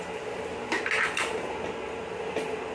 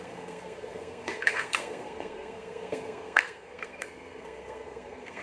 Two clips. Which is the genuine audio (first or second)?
first